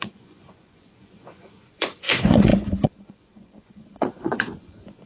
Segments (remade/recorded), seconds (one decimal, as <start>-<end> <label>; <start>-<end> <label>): 0.0-5.1 remade